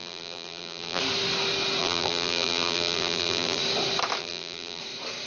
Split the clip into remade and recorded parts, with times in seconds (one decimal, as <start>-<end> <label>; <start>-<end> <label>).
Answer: 0.0-1.0 remade; 1.0-1.8 recorded; 1.8-3.6 remade; 3.6-4.2 recorded; 4.2-4.8 remade; 4.8-5.3 recorded